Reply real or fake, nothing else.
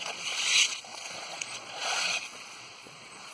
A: fake